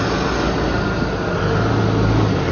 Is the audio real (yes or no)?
yes